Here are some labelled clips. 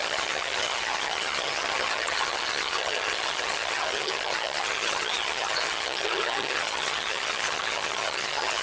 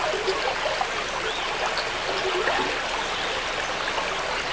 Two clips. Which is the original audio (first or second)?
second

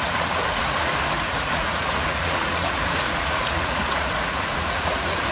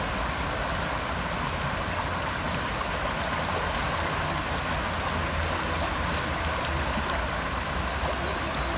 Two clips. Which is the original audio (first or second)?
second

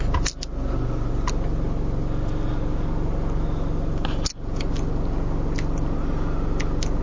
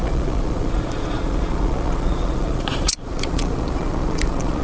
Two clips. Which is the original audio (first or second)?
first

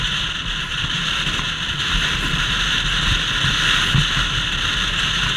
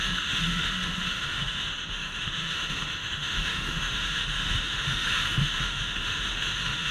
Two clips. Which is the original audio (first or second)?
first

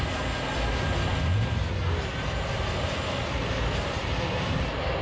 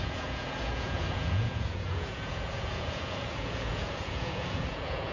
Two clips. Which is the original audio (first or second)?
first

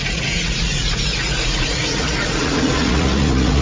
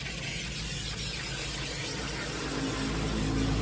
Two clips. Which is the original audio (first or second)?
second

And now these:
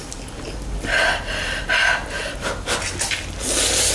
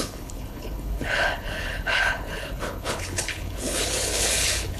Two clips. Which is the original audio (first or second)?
first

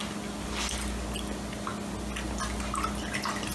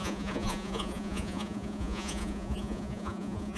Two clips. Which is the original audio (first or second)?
first